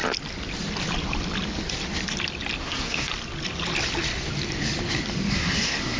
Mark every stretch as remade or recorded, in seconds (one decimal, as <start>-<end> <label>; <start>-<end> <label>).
0.0-2.6 recorded; 2.6-3.1 remade; 3.1-5.3 recorded; 5.3-6.0 remade